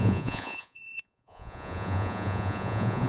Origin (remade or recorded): remade